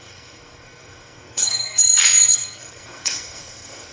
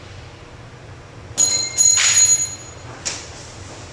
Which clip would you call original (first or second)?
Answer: second